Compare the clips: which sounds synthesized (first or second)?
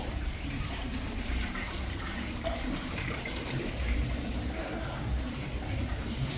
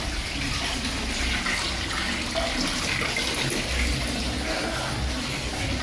first